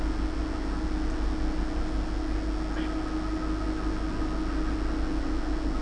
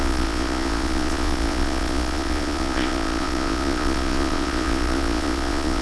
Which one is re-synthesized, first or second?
second